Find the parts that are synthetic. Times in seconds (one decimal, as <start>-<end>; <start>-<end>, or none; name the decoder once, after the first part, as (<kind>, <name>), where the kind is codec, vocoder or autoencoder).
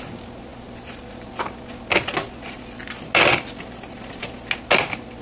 none